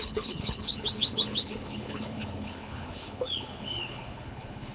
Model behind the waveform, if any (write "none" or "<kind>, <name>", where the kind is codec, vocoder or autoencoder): codec, HILCodec